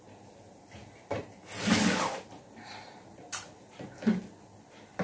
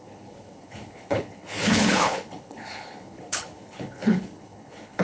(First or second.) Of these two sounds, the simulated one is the second